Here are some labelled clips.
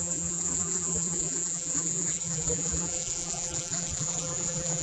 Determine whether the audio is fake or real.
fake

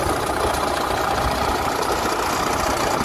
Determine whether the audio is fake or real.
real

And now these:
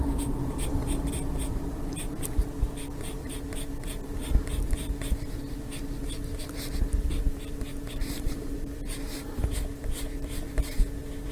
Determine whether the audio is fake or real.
fake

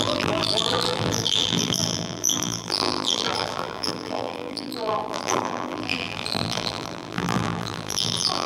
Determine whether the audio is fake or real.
fake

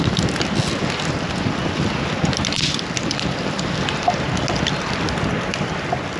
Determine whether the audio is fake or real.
real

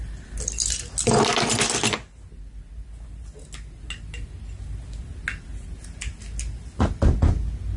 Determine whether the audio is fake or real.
real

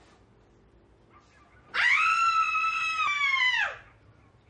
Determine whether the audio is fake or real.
real